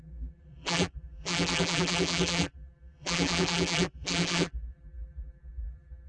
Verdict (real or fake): fake